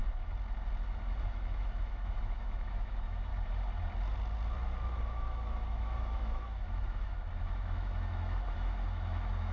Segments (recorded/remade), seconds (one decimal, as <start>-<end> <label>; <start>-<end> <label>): 0.0-1.2 recorded; 1.2-3.3 remade; 3.3-5.1 recorded; 5.1-9.5 remade